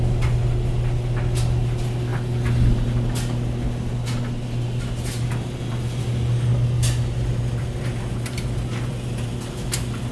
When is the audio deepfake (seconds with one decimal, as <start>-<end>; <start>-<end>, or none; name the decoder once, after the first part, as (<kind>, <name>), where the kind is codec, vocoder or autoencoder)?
none